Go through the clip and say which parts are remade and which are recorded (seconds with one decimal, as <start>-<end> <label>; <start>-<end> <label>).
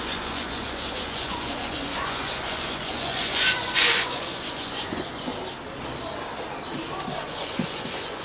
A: 0.0-5.3 remade; 5.3-7.2 recorded; 7.2-8.2 remade